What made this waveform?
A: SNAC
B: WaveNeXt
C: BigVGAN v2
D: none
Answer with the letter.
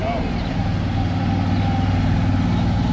D